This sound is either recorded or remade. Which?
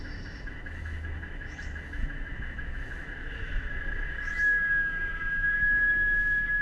remade